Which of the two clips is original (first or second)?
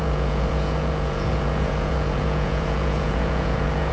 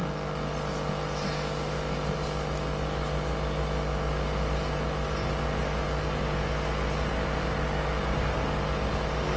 second